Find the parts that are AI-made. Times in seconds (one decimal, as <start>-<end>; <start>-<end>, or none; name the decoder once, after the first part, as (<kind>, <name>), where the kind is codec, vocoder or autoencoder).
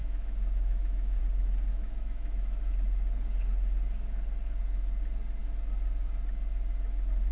0.0-1.2 (autoencoder, DAC-VAE); 1.7-2.7